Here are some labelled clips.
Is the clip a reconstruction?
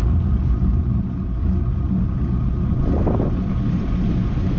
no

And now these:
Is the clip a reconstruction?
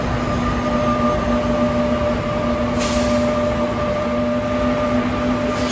no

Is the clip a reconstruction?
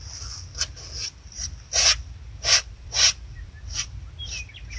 no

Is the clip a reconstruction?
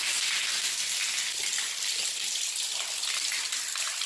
no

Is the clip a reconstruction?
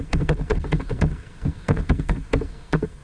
yes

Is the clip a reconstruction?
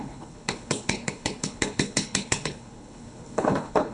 yes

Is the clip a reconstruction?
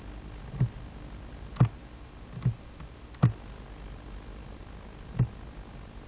no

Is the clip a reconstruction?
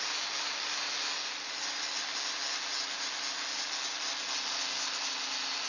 no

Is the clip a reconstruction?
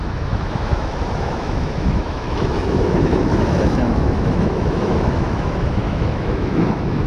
yes